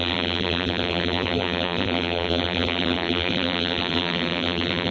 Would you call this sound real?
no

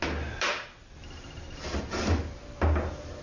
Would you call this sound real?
yes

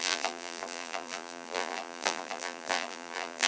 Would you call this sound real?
no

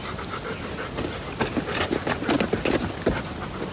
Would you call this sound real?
yes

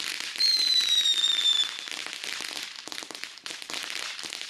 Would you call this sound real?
no